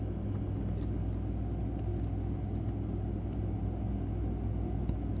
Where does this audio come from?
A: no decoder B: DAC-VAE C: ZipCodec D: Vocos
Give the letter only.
A